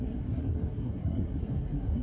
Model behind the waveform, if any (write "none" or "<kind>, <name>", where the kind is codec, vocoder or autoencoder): codec, SNAC